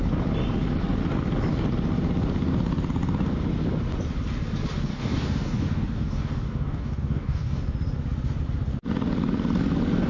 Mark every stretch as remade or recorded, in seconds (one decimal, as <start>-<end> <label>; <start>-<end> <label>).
0.0-4.9 recorded; 4.9-7.6 remade; 7.6-10.1 recorded